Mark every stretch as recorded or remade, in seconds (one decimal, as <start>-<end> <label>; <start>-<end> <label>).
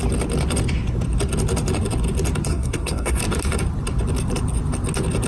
0.0-2.5 recorded; 2.5-3.2 remade; 3.2-5.3 recorded